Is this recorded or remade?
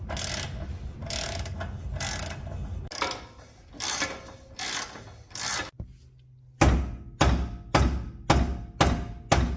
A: recorded